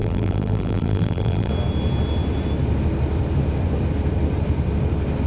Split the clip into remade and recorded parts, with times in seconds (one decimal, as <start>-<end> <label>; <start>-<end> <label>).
0.0-1.5 remade; 1.5-5.3 recorded